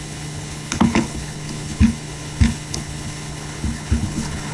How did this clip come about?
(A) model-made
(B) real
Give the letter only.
A